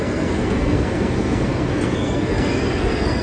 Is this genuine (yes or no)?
no